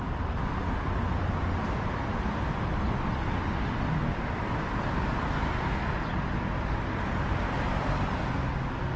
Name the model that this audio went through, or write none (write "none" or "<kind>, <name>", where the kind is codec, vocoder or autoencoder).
none